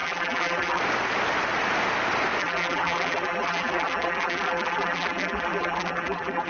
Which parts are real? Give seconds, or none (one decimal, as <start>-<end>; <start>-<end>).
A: 0.8-2.4